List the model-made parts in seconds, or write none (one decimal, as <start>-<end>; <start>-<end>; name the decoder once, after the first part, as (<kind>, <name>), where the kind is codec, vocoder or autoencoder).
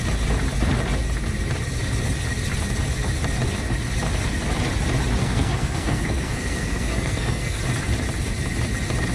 5.2-7.6 (codec, SNAC)